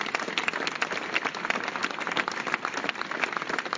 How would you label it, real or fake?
real